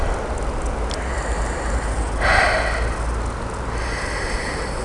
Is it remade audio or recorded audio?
recorded